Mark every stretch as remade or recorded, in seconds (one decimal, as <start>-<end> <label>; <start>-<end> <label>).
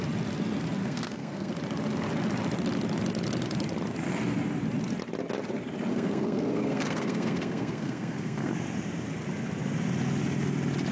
0.0-0.8 recorded; 0.8-1.5 remade; 1.5-5.9 recorded; 5.9-8.5 remade; 8.5-10.9 recorded